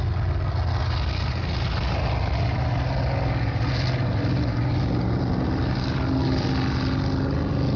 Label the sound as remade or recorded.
recorded